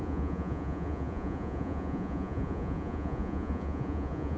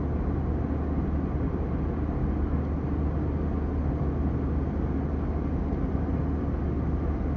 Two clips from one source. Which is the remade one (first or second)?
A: first